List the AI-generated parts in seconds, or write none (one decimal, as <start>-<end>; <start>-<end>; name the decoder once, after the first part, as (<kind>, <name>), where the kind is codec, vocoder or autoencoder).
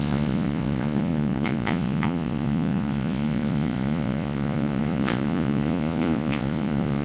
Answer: 0.0-7.0 (vocoder, Vocos)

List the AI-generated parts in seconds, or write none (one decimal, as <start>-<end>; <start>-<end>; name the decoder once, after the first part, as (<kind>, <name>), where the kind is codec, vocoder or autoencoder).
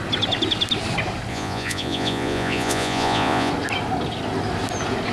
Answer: 1.3-3.5 (vocoder, Vocos)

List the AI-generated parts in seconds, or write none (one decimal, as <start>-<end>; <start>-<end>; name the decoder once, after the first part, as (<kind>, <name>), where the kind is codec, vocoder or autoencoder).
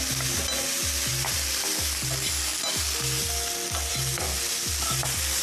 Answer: none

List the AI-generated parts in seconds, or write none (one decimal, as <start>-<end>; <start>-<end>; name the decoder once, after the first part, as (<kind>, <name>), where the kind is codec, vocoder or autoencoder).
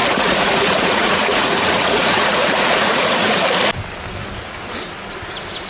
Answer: 0.0-3.4 (vocoder, Vocos)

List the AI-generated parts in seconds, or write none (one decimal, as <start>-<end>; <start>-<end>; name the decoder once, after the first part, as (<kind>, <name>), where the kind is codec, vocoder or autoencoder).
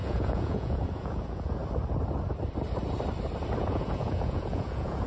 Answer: 0.0-1.6 (vocoder, Vocos); 3.6-5.1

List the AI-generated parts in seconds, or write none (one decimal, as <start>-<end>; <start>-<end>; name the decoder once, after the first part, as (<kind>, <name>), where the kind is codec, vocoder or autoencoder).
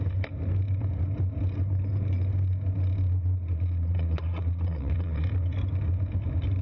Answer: 3.5-5.3 (vocoder, Vocos)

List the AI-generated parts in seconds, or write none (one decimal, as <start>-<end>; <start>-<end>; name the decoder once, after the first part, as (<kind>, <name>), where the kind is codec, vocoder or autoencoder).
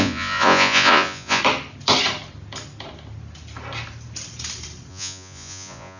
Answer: 0.0-1.4 (vocoder, Vocos); 4.9-6.0